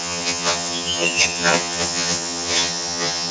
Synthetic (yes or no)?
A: yes